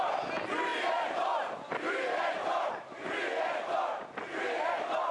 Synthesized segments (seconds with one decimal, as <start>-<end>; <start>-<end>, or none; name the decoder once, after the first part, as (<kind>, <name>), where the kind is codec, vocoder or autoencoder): 0.7-2.7 (vocoder, BigVGAN v2)